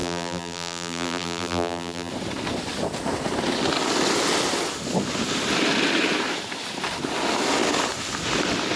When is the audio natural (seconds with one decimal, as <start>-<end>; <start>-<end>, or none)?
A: 2.1-8.8